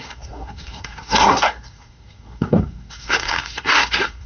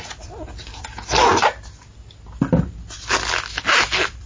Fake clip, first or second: first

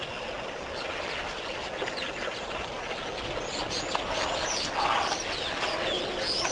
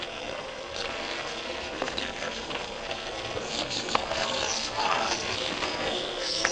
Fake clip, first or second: second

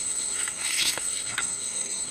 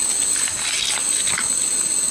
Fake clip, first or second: first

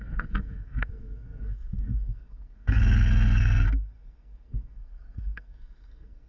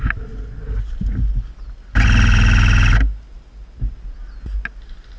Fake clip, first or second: first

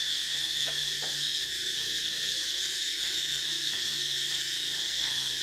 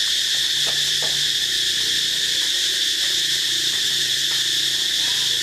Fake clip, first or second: first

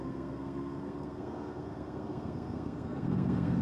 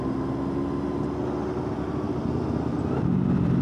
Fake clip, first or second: first